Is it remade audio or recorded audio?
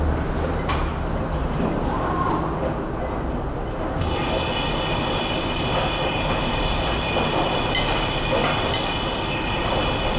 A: recorded